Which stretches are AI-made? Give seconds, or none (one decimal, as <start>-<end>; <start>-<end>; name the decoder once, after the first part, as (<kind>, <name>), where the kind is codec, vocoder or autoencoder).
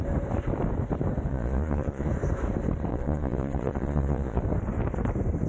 1.3-2.1 (vocoder, Vocos); 2.9-4.4